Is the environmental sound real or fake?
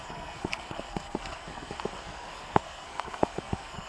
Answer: fake